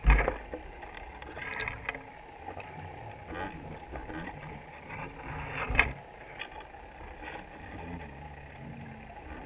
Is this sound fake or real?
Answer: real